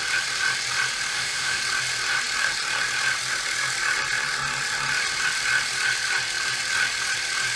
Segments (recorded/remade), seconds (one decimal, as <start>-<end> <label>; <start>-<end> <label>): 0.0-1.1 recorded; 1.1-1.6 remade; 1.6-7.6 recorded